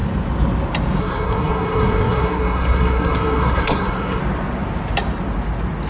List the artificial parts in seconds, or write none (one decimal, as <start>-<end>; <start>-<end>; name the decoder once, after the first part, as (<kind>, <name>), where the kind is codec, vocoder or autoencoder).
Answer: 1.0-4.2 (codec, SNAC)